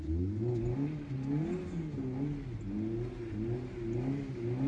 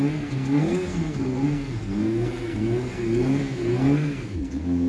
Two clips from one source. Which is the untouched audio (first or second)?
first